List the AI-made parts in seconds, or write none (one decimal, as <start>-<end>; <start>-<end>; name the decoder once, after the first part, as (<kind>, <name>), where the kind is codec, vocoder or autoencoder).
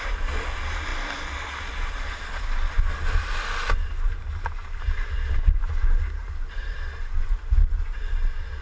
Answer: none